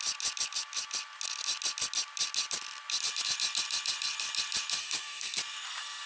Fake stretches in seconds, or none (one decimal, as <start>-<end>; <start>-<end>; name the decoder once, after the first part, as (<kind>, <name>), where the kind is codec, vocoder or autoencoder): 4.8-5.4 (codec, SNAC)

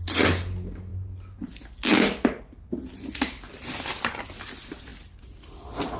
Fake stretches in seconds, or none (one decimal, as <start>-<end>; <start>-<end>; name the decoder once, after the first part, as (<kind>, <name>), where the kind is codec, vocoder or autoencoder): none

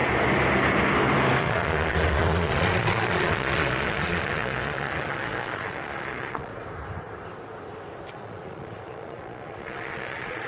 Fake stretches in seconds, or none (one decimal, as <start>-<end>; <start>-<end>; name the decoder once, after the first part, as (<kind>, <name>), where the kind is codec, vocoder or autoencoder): 1.4-6.5 (vocoder, Vocos); 8.1-10.5

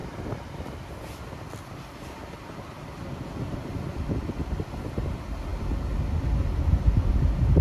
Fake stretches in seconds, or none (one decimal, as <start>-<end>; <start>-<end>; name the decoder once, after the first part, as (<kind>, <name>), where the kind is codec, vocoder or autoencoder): none

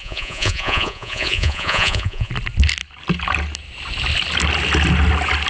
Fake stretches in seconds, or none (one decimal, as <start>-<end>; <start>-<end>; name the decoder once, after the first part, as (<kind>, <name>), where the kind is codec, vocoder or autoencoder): 0.0-2.3 (vocoder, Vocos)

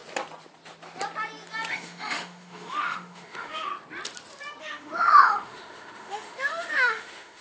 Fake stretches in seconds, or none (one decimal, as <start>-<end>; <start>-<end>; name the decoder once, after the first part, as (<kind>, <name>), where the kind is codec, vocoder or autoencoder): 1.7-3.7 (autoencoder, DAC-VAE); 4.6-7.4

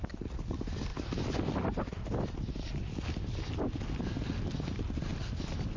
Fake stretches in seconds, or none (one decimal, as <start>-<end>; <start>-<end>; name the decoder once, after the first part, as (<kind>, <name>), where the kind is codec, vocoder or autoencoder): none

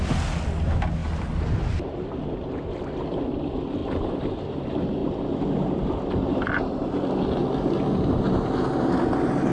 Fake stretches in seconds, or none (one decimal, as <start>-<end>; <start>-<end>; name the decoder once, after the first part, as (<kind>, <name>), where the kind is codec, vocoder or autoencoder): none